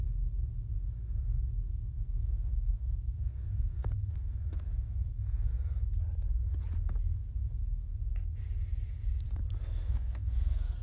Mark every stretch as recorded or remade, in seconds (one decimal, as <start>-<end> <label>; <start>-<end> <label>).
0.0-1.7 recorded; 1.7-5.5 remade; 5.5-9.6 recorded; 9.6-10.8 remade